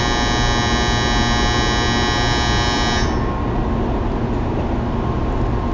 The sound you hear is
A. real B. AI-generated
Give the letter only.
A